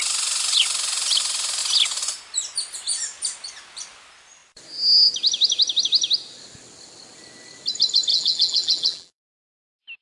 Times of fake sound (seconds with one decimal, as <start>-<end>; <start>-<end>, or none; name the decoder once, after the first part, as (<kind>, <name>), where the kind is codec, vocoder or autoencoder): 8.1-9.2 (vocoder, BigVGAN v2)